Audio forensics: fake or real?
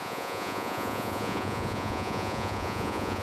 fake